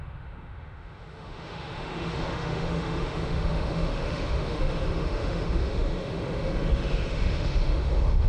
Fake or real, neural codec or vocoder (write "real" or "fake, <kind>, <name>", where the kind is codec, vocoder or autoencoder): fake, autoencoder, DAC-VAE